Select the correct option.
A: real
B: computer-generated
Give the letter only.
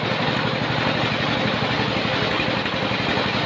A